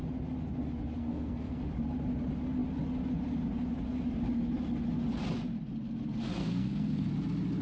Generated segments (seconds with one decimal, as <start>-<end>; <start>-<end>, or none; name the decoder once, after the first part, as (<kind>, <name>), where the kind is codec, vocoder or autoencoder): 1.0-1.6 (codec, SNAC); 6.4-7.1